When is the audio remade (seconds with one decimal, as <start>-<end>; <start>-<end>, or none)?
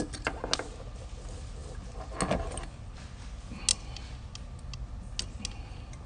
none